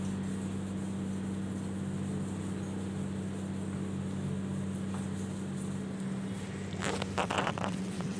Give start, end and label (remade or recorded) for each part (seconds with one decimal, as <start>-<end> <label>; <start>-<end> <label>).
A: 0.0-7.2 recorded; 7.2-8.2 remade